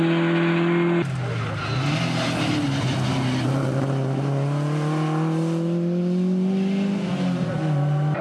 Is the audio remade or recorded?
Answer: recorded